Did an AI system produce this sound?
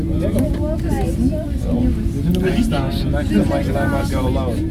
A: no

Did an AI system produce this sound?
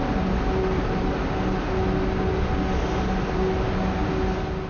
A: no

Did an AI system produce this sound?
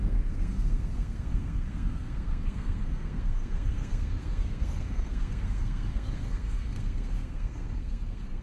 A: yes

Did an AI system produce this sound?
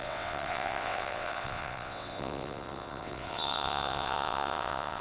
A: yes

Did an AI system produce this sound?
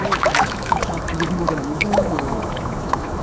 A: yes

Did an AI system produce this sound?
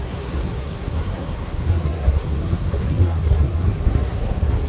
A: yes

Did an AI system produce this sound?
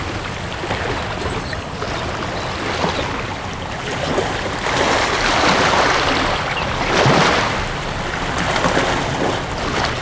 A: no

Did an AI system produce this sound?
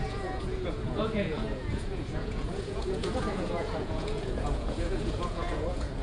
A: yes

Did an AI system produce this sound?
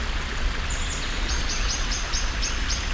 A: no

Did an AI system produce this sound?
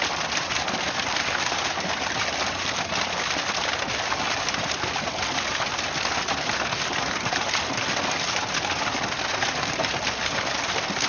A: no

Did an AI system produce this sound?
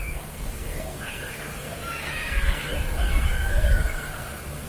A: yes